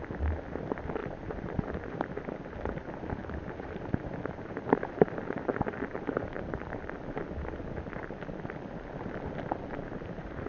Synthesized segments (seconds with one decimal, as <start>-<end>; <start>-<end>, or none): 1.0-2.0; 3.2-6.9